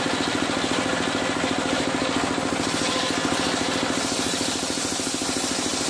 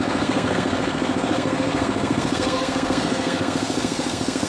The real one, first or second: first